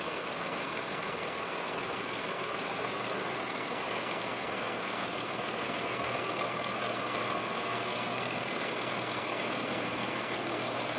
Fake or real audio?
fake